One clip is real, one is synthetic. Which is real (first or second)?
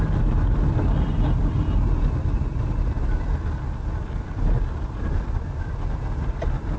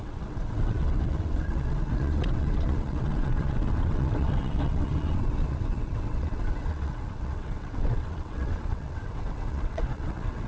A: first